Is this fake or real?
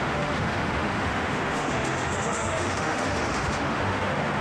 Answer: fake